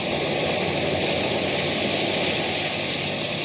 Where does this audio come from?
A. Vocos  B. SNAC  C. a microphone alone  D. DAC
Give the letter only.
C